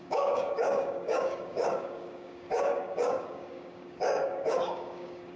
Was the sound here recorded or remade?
remade